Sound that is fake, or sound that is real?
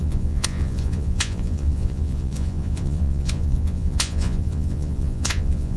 fake